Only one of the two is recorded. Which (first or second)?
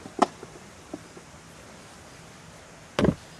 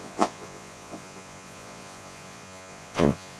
first